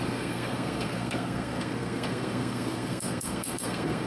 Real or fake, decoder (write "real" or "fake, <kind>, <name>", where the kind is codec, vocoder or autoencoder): fake, codec, SNAC